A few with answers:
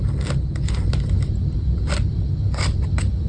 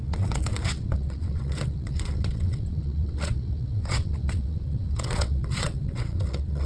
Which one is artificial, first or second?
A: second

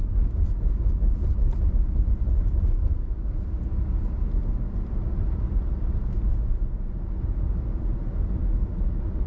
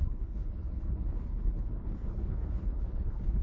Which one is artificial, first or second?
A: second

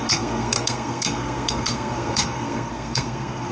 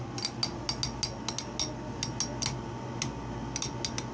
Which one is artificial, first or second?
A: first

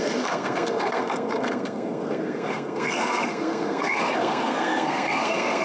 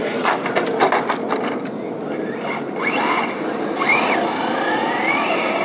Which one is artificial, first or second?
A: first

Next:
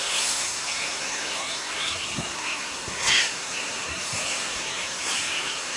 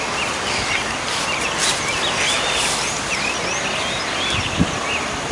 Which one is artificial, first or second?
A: first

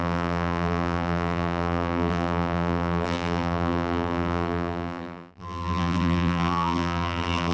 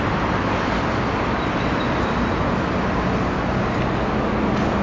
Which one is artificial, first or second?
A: first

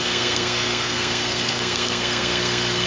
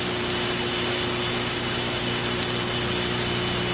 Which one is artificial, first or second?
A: first